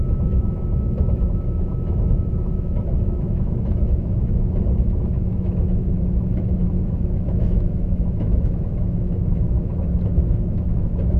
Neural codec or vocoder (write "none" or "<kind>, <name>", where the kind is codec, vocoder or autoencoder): autoencoder, DAC-VAE